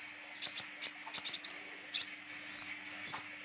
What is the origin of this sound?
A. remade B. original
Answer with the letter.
B